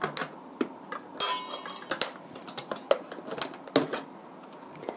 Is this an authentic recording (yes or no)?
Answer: yes